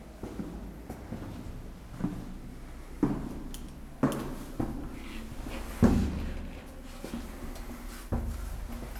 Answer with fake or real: real